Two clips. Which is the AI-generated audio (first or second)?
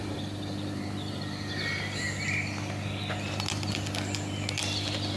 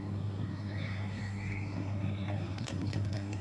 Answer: second